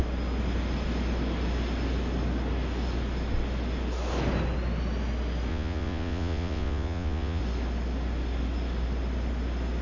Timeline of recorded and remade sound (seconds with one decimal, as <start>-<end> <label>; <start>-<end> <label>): 0.0-5.5 recorded; 5.5-7.4 remade; 7.4-9.8 recorded